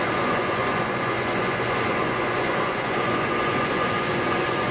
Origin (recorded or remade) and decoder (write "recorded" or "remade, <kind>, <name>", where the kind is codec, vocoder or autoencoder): remade, vocoder, Vocos